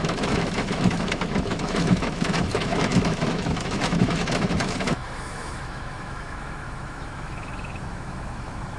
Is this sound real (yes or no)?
no